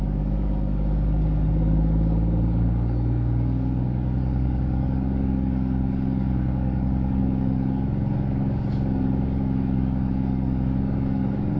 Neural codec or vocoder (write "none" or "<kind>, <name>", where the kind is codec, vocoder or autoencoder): codec, DAC